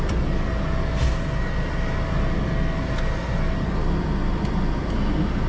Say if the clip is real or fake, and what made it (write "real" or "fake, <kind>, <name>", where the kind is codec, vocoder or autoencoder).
real